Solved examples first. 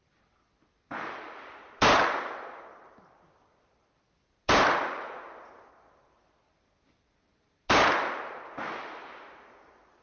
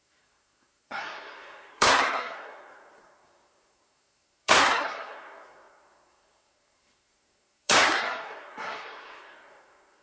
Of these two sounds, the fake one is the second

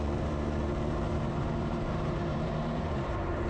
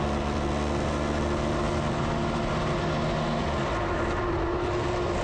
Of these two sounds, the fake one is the first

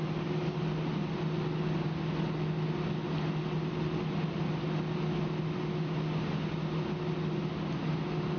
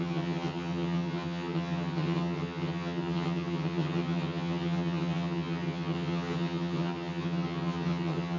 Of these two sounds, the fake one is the second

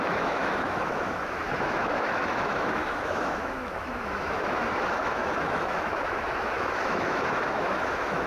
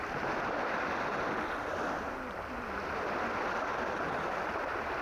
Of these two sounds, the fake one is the first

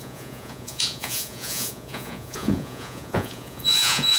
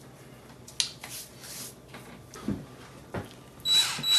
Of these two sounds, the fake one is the first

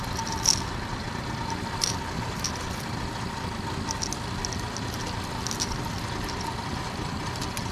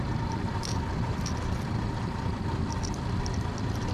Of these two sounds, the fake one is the second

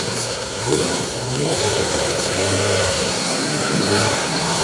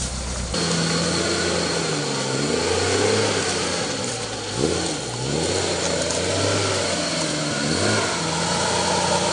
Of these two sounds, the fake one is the first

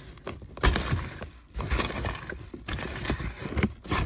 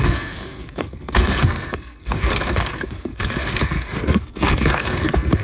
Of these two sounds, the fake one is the second